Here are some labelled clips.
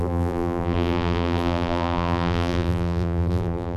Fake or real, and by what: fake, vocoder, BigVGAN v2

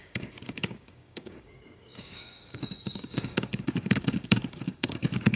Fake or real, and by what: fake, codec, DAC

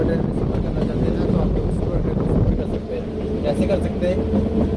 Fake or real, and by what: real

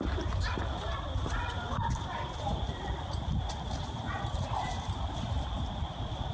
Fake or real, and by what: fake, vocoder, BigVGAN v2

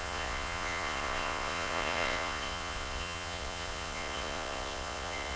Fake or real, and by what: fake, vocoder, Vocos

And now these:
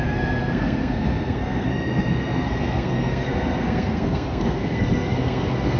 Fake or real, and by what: fake, codec, SNAC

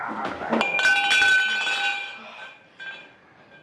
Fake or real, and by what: real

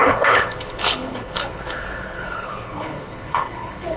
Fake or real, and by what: fake, codec, HILCodec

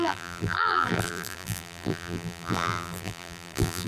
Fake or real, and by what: fake, vocoder, BigVGAN v2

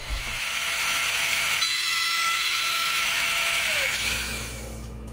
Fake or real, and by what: fake, autoencoder, DAC-VAE